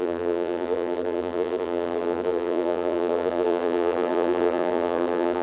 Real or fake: fake